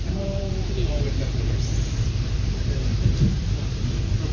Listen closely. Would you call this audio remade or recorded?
remade